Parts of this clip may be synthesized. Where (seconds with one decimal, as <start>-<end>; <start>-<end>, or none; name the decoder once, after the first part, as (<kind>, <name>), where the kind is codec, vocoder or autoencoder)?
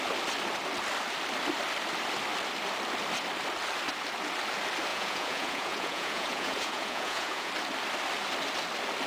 4.9-7.5 (vocoder, Vocos)